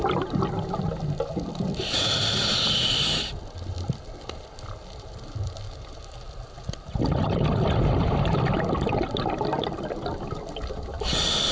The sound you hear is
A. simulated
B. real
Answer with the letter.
A